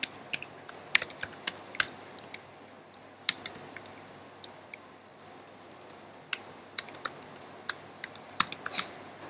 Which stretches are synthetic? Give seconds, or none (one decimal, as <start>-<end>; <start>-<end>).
none